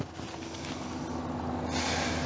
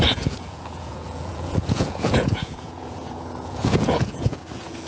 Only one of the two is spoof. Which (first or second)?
second